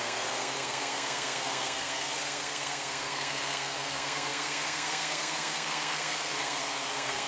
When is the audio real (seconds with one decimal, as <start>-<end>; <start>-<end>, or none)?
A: none